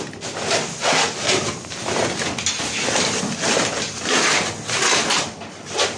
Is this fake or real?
real